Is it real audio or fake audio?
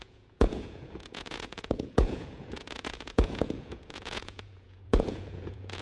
fake